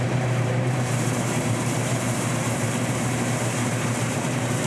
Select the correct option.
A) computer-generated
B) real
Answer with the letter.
A